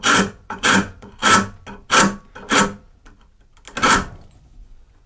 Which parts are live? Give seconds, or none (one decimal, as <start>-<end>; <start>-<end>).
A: 1.2-4.3